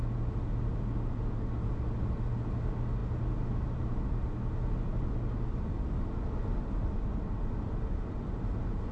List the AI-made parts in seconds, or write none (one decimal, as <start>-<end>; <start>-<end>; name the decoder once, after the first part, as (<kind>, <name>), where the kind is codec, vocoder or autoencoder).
none